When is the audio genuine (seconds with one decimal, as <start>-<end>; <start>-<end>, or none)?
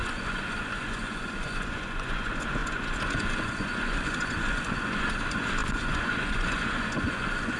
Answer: none